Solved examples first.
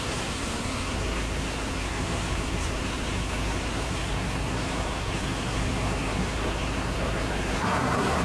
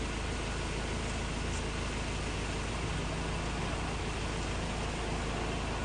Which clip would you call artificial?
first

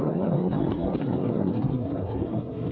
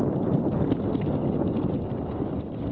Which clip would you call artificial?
first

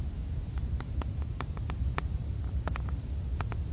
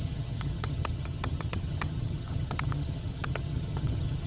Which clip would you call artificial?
second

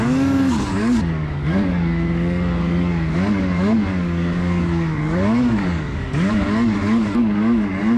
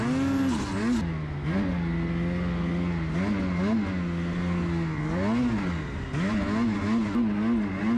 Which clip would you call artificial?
first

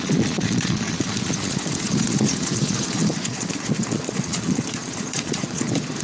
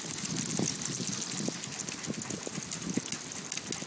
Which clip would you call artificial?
first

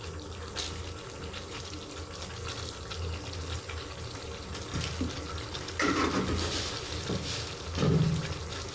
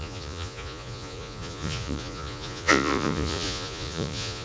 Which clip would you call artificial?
second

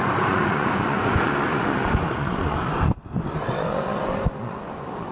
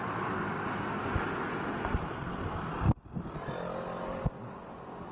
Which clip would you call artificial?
first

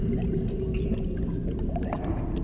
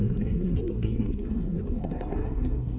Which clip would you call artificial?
second